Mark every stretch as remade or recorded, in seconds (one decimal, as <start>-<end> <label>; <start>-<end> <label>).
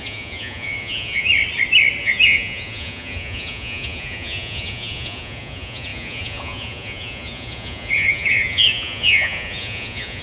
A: 0.0-1.3 remade; 1.3-2.0 recorded; 2.0-10.2 remade